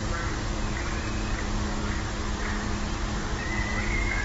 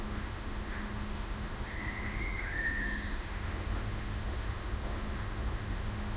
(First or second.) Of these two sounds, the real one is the first